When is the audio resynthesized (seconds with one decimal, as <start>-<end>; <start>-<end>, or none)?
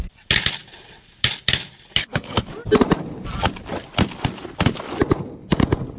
2.0-2.5